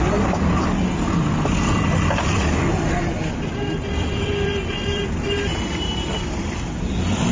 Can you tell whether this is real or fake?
real